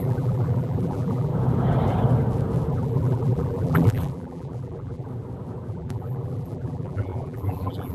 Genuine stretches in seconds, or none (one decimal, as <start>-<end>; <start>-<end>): 1.3-2.7; 5.1-5.7